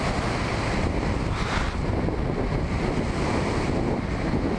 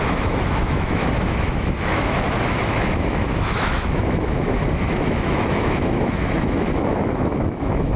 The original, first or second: first